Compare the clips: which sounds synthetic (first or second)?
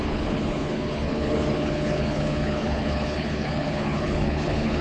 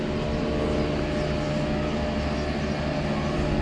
first